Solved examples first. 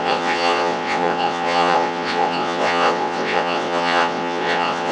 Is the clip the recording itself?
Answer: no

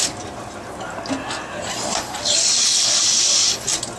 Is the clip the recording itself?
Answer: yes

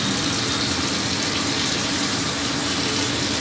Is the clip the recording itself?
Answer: yes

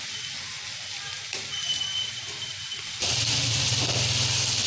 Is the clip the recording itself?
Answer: yes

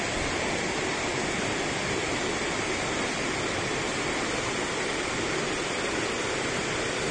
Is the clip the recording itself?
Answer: no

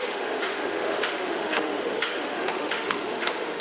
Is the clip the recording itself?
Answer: no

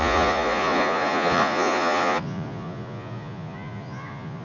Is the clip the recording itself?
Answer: no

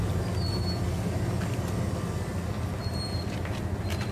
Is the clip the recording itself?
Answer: yes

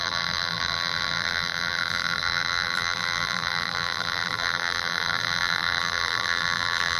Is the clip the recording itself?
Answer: no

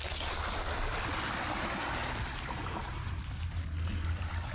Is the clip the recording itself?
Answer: yes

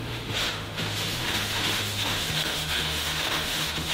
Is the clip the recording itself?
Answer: no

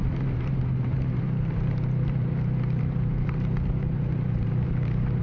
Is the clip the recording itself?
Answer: no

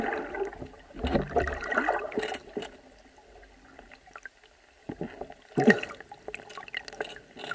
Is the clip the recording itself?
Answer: yes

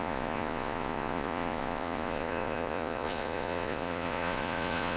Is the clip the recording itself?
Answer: no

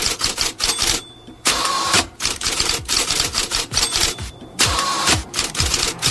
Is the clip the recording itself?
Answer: no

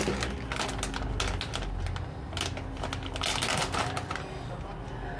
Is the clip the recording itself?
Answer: yes